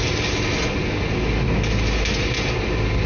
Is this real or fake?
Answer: real